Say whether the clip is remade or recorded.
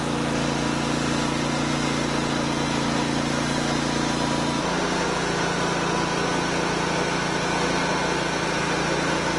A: recorded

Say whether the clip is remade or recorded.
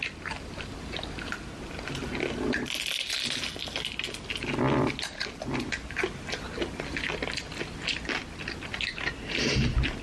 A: recorded